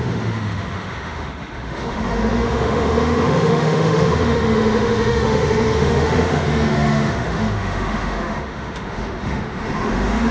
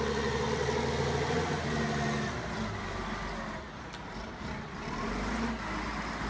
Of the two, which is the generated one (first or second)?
first